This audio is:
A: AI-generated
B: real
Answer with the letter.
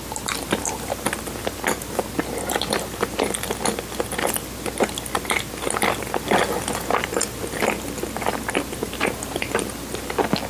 B